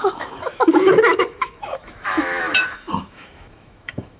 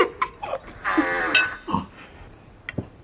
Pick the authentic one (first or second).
second